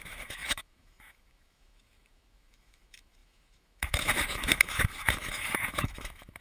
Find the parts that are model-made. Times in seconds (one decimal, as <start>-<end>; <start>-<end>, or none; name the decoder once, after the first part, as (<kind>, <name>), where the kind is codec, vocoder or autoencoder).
0.0-6.4 (autoencoder, DAC-VAE)